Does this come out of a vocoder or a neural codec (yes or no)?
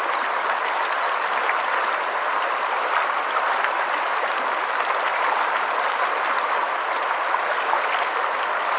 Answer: no